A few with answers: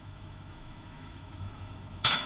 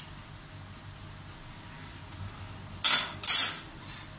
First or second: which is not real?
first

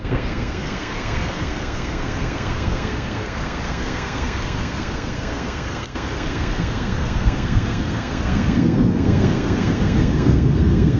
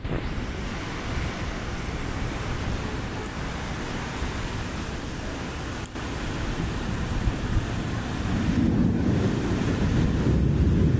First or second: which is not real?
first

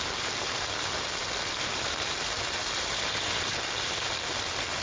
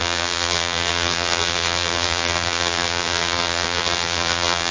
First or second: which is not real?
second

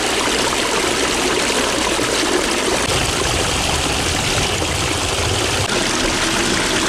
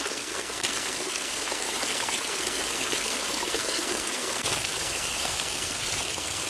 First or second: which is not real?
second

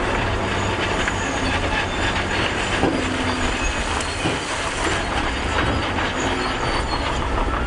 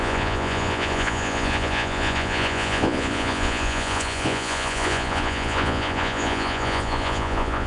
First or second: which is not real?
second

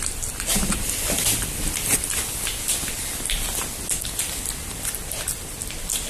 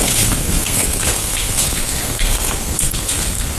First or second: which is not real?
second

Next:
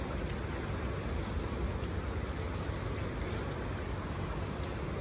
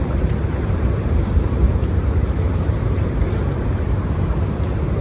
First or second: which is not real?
second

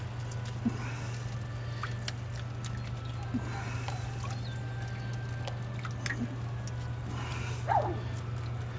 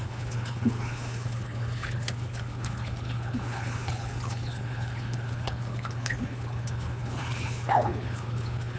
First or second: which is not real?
second